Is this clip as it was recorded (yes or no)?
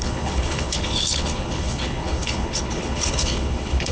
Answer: no